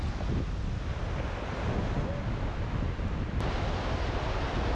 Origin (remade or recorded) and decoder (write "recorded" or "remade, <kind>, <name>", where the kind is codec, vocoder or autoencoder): recorded